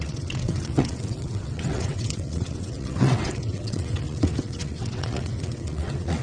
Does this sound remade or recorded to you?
remade